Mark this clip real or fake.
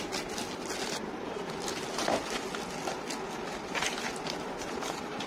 real